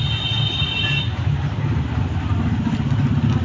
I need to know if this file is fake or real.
real